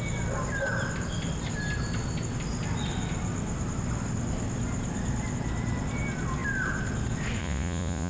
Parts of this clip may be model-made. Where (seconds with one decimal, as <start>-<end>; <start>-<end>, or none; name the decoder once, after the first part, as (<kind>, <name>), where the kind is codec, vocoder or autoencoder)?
7.4-8.1 (vocoder, Vocos)